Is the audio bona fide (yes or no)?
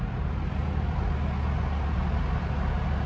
yes